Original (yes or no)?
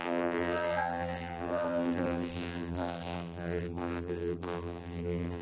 no